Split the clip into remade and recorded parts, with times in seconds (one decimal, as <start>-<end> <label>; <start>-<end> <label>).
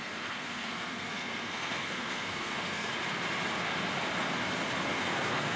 0.0-2.9 remade; 2.9-4.9 recorded; 4.9-5.6 remade